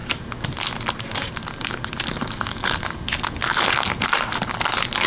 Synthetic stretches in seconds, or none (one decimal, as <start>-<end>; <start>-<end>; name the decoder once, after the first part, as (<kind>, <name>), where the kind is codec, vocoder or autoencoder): none